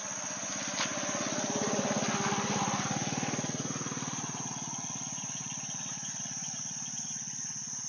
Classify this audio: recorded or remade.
recorded